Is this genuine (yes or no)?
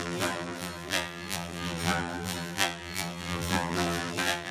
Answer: no